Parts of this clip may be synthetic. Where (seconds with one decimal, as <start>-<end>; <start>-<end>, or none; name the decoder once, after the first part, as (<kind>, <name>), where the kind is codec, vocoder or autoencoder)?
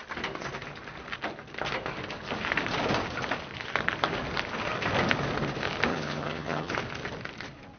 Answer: 5.9-6.7 (vocoder, HiFi-GAN)